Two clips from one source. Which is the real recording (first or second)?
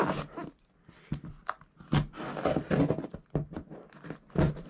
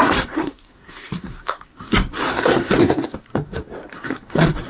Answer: first